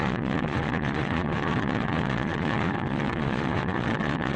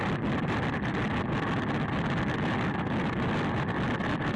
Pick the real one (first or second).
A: second